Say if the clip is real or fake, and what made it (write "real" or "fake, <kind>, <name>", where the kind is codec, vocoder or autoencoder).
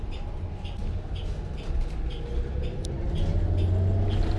real